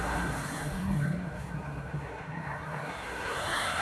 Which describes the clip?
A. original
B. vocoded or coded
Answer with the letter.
B